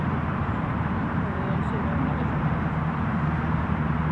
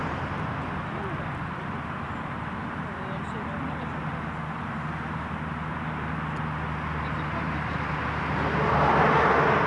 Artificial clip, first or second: first